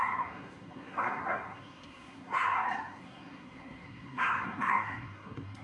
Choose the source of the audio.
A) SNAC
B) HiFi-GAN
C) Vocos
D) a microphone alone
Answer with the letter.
A